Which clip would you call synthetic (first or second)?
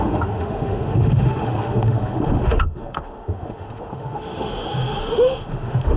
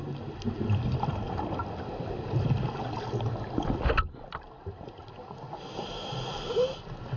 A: first